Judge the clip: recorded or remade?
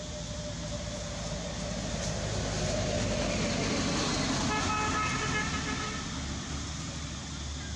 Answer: recorded